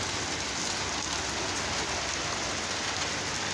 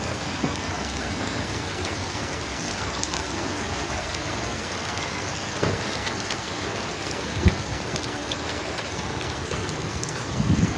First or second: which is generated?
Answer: second